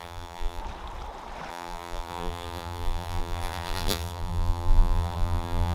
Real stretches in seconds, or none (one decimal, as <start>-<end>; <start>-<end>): 0.6-1.5